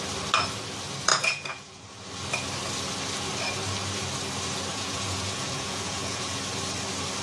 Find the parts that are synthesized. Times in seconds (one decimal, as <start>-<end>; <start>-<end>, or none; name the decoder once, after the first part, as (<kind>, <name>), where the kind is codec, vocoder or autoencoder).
1.1-1.8 (vocoder, Vocos); 4.7-6.4